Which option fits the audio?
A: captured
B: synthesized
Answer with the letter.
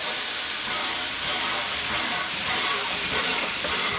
B